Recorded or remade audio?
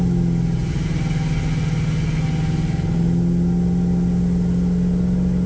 recorded